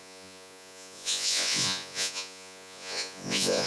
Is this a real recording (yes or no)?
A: no